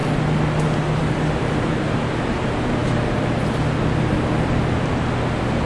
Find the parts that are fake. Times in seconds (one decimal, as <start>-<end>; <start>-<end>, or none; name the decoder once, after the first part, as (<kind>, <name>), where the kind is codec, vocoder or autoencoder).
1.0-2.1 (vocoder, BigVGAN v2)